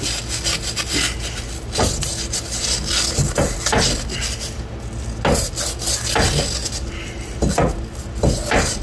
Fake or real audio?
real